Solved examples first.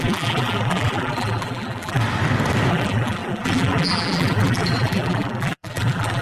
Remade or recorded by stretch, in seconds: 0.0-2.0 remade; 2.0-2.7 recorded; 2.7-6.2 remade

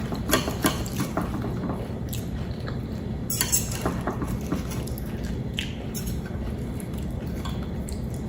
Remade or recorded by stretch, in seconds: 0.0-3.2 remade; 3.2-5.3 recorded; 5.3-8.3 remade

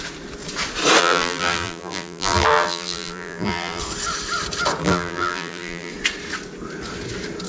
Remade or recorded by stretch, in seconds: 0.0-1.0 recorded; 1.0-3.8 remade; 3.8-4.8 recorded; 4.8-5.9 remade; 5.9-7.5 recorded

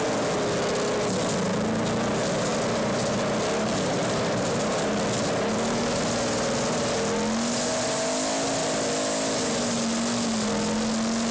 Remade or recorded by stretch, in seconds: 0.0-2.5 recorded; 2.5-6.9 remade; 6.9-11.3 recorded

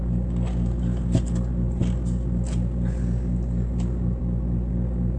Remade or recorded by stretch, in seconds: 0.0-5.2 recorded

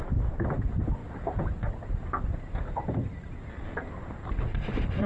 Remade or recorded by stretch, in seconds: 0.0-5.1 recorded

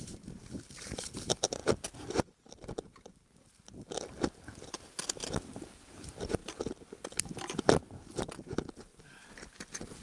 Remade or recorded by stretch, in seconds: 0.0-1.6 remade; 1.6-5.4 recorded; 5.4-6.4 remade; 6.4-7.6 recorded; 7.6-8.9 remade; 8.9-9.5 recorded; 9.5-10.0 remade